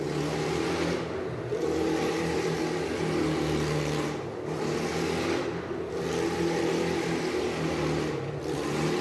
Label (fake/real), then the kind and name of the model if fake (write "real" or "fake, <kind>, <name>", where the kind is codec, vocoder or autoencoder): real